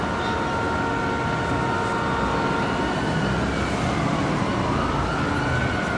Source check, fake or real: real